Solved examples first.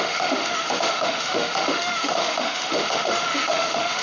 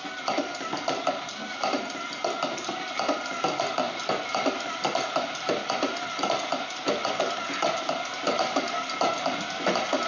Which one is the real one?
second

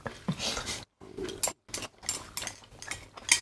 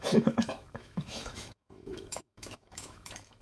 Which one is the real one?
first